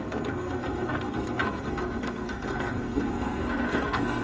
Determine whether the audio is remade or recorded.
remade